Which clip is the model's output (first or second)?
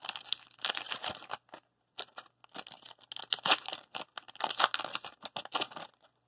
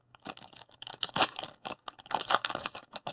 second